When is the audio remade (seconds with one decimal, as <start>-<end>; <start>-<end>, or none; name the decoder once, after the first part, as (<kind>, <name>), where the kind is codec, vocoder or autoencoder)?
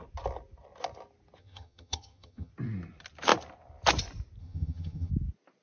1.4-2.5 (vocoder, HiFi-GAN); 4.4-5.1